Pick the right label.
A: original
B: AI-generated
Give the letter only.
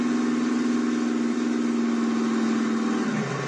A